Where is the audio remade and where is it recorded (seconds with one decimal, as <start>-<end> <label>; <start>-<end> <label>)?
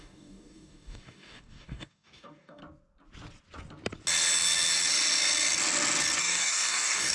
0.0-2.6 remade; 2.6-6.2 recorded; 6.2-7.1 remade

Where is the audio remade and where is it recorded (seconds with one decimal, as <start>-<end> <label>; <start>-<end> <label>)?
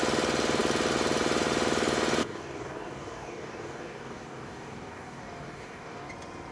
0.0-2.2 recorded; 2.2-6.1 remade; 6.1-6.5 recorded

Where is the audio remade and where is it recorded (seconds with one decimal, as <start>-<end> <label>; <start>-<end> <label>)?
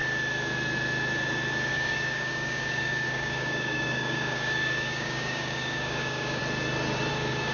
0.0-1.7 recorded; 1.7-6.4 remade; 6.4-7.1 recorded; 7.1-7.5 remade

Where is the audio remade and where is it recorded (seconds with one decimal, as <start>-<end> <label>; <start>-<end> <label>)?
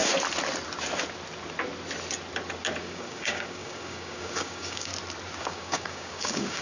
0.0-2.8 recorded; 2.8-4.9 remade; 4.9-5.4 recorded; 5.4-6.6 remade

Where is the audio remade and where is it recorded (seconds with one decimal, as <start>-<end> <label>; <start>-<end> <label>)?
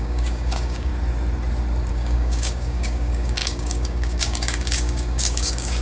0.0-0.9 remade; 0.9-1.9 recorded; 1.9-5.8 remade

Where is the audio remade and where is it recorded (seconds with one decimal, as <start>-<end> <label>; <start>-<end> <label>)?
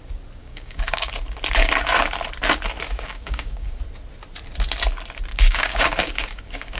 0.0-0.4 recorded; 0.4-1.1 remade; 1.1-2.9 recorded; 2.9-3.8 remade; 3.8-5.3 recorded; 5.3-6.8 remade